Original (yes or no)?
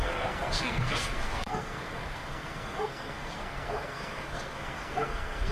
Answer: no